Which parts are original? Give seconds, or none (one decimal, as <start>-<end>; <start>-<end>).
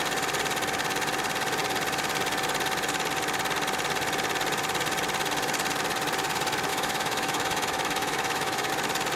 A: 0.0-6.7; 8.7-9.2